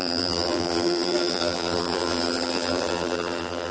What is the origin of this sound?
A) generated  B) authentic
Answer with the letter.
A